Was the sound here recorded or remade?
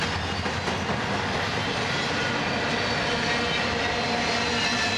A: recorded